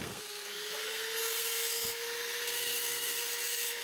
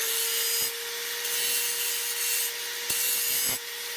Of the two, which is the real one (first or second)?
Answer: second